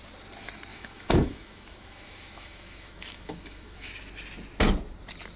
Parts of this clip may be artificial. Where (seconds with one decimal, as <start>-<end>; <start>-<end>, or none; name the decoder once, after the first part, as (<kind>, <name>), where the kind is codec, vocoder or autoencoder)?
0.7-3.9 (autoencoder, DAC-VAE)